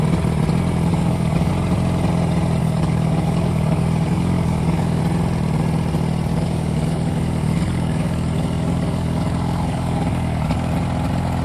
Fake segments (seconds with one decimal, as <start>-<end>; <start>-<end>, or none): 0.9-1.5; 2.6-5.0; 6.3-10.7